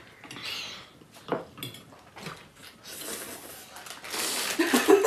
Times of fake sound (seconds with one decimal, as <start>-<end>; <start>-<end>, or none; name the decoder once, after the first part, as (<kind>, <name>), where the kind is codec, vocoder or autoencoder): none